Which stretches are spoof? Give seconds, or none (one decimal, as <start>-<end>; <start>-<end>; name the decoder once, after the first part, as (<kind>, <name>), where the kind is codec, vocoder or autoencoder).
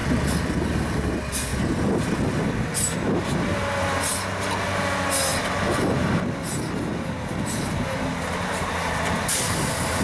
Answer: none